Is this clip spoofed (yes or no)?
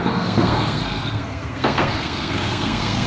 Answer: yes